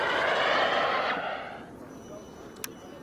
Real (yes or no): yes